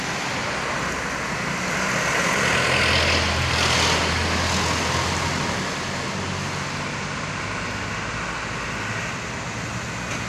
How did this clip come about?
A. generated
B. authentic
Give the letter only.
B